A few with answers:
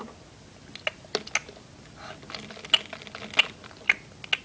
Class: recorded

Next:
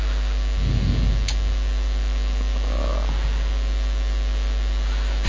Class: recorded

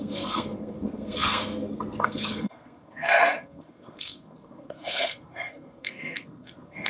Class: remade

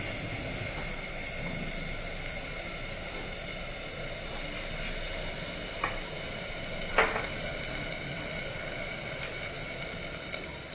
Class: recorded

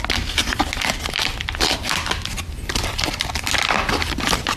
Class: recorded